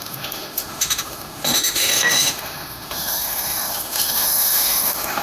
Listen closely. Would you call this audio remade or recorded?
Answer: remade